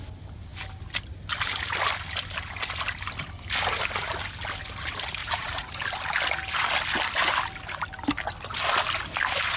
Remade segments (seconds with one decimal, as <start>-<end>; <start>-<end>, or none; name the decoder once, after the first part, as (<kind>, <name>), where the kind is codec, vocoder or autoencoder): 5.2-5.8 (vocoder, Vocos)